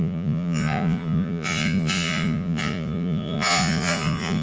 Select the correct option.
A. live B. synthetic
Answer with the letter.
B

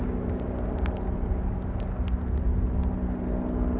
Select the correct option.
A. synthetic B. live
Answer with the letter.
B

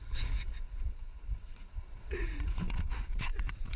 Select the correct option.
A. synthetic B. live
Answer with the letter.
A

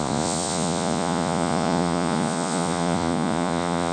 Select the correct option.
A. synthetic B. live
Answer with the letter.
A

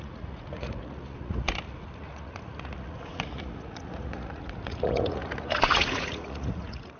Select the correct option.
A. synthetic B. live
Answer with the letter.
A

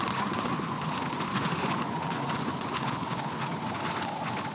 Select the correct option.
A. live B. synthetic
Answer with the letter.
B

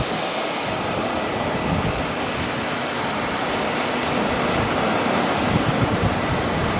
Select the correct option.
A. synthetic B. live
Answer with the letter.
B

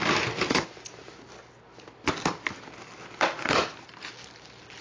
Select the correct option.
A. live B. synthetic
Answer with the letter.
A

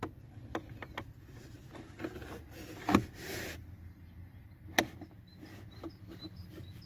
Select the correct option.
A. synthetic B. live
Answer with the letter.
B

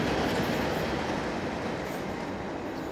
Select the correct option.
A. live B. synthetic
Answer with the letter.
A